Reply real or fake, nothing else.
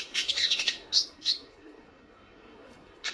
fake